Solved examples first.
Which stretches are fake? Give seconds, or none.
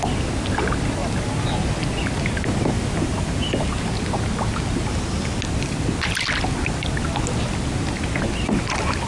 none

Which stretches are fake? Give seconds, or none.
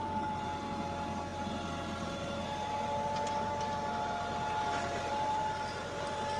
none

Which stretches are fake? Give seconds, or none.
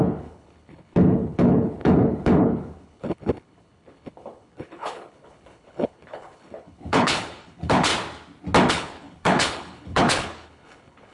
0.0-7.9 (codec, HILCodec); 8.7-11.1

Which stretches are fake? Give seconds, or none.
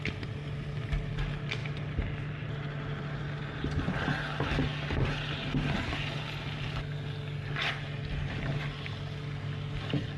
1.6-3.4 (vocoder, BigVGAN v2)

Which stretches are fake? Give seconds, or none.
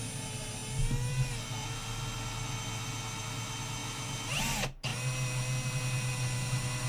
none